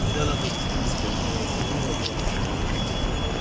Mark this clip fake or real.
real